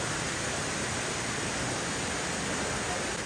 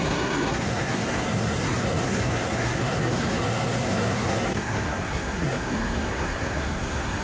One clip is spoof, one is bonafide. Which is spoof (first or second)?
second